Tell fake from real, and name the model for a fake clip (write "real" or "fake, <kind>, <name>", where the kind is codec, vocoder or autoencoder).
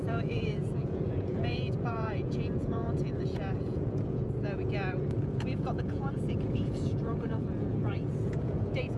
fake, vocoder, Vocos